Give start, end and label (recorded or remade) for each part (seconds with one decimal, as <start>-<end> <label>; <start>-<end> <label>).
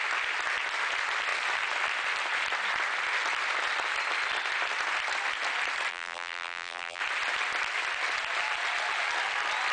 0.0-5.9 recorded; 5.9-7.0 remade; 7.0-9.7 recorded